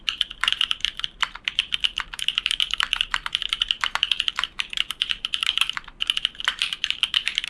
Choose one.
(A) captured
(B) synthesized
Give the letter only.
B